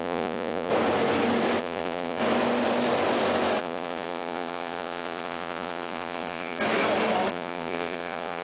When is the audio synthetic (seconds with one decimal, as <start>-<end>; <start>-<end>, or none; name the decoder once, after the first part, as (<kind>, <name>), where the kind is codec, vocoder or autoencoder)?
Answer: 0.0-0.7 (vocoder, Vocos); 1.6-2.2; 3.6-6.6; 7.3-8.4